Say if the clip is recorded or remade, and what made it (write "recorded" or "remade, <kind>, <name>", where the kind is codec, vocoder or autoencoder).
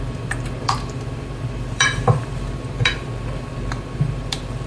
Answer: remade, vocoder, BigVGAN v2